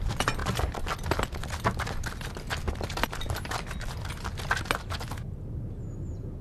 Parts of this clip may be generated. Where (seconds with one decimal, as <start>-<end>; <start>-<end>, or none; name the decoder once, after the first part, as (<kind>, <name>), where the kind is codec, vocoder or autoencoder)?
none